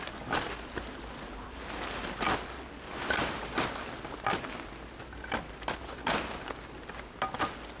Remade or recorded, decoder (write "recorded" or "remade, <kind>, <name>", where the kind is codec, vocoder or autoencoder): recorded